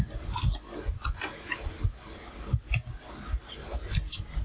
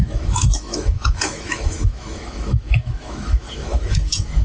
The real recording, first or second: first